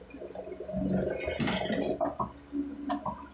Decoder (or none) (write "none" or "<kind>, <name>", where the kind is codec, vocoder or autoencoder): none